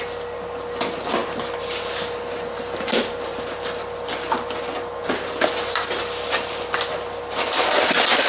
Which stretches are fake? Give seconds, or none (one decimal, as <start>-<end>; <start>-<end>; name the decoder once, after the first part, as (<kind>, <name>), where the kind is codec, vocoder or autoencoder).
none